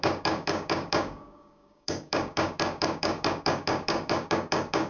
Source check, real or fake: fake